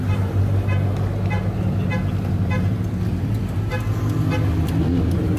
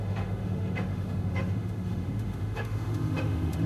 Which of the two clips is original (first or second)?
first